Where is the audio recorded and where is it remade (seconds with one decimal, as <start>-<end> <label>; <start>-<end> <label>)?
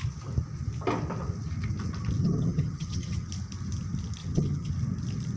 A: 0.0-2.2 recorded; 2.2-3.3 remade; 3.3-4.2 recorded; 4.2-4.7 remade; 4.7-5.4 recorded